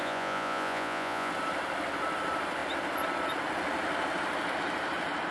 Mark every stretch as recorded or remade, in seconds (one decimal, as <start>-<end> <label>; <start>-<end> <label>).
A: 0.0-1.3 remade; 1.3-5.3 recorded